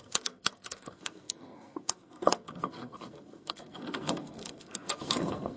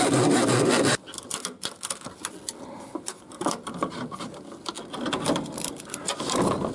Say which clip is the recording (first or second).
second